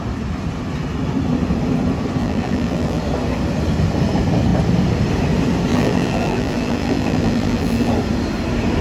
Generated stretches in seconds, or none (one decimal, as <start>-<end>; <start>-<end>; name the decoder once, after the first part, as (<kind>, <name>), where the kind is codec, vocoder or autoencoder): 2.2-3.0 (vocoder, BigVGAN v2); 5.7-7.9